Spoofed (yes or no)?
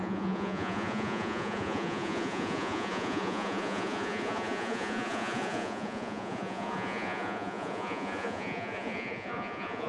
yes